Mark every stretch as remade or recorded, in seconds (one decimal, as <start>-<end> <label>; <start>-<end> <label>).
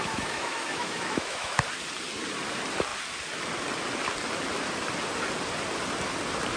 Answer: 0.0-1.6 remade; 1.6-6.6 recorded